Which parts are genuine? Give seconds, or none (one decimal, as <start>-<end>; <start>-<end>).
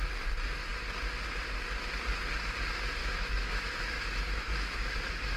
0.0-3.0